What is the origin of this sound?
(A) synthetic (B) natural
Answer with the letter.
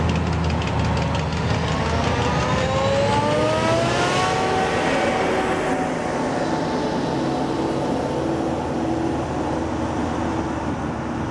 B